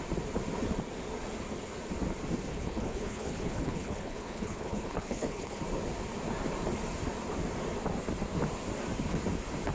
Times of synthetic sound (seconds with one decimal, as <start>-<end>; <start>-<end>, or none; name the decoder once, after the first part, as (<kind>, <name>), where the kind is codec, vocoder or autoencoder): 2.5-5.6 (codec, HILCodec)

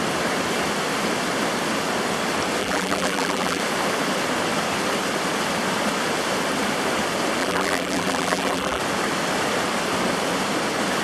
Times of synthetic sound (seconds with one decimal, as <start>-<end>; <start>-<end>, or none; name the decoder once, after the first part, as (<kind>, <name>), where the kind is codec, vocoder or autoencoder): 2.6-3.6 (vocoder, BigVGAN v2); 7.4-8.8

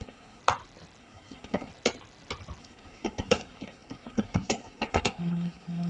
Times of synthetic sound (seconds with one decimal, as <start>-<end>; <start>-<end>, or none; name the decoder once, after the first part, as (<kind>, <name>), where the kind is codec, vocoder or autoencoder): 0.0-0.4 (codec, SNAC); 1.0-1.7; 2.6-5.9

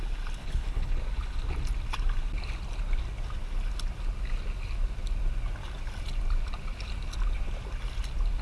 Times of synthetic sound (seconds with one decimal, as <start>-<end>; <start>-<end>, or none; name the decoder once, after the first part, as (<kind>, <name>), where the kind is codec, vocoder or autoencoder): 0.4-1.0 (codec, HILCodec)

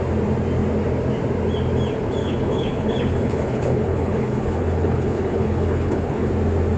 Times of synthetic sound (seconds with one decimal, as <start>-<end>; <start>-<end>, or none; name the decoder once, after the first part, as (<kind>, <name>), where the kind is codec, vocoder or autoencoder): 2.2-6.3 (codec, HILCodec)

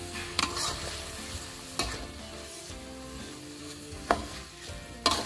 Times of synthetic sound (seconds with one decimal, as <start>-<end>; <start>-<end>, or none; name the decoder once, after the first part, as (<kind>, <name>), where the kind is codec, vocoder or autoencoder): 0.0-0.4 (codec, SNAC); 3.6-4.3

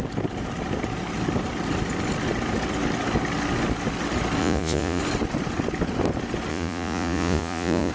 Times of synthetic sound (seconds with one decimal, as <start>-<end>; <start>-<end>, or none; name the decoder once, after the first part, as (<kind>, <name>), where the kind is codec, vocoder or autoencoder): 4.4-5.0 (vocoder, Vocos); 6.5-7.9